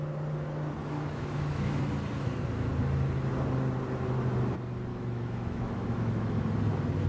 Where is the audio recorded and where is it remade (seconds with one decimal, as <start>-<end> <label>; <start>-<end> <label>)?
0.0-0.8 recorded; 0.8-1.8 remade; 1.8-4.9 recorded; 4.9-6.4 remade; 6.4-7.1 recorded